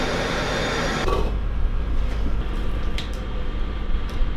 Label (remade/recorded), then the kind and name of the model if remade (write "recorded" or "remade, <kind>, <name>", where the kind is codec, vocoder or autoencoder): remade, vocoder, BigVGAN v2